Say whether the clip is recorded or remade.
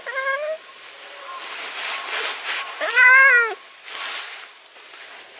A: recorded